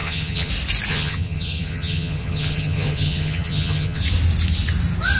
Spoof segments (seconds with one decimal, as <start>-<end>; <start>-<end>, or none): 0.0-0.5; 0.9-4.0